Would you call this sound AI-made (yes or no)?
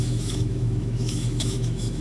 yes